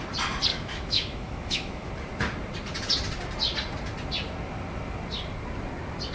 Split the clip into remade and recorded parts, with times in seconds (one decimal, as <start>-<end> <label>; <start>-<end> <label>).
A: 0.0-0.5 recorded; 0.5-1.9 remade; 1.9-6.1 recorded